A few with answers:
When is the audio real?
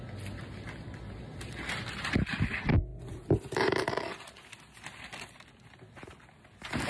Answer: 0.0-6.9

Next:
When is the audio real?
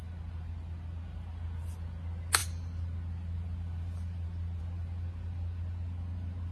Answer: 0.0-6.5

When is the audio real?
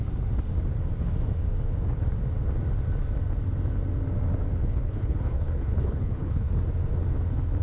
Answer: 0.0-4.6; 6.5-7.6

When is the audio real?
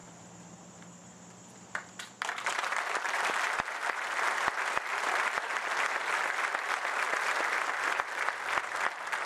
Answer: 0.0-9.3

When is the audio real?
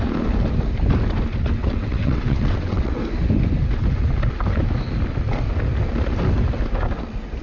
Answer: 0.0-1.6; 3.0-7.4